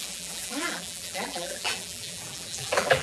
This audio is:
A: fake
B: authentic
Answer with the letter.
A